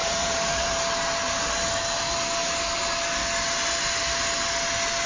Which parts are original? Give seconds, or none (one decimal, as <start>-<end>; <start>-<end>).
0.8-5.1